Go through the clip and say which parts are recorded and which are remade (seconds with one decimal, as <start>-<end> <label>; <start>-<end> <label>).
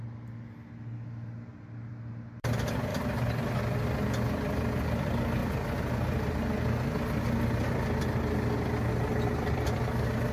0.0-5.4 recorded; 5.4-6.3 remade; 6.3-9.1 recorded; 9.1-9.8 remade; 9.8-10.3 recorded